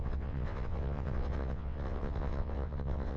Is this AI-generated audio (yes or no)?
yes